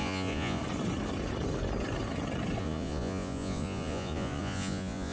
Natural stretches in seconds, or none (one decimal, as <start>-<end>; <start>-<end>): 0.6-2.6